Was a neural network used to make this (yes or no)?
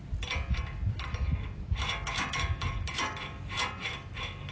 no